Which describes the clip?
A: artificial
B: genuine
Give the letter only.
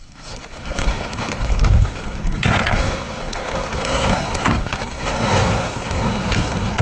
A